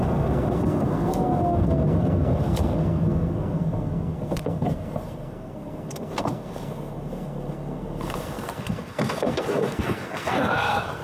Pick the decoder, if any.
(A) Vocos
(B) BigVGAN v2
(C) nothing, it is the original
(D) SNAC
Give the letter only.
D